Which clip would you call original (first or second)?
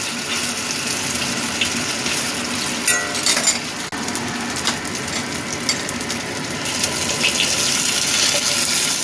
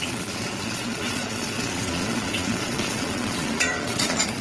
first